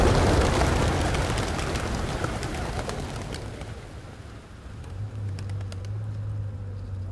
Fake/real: real